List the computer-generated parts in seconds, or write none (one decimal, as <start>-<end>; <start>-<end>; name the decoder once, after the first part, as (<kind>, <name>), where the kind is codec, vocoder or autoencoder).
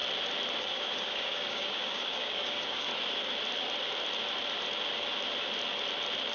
0.6-2.9 (codec, DAC)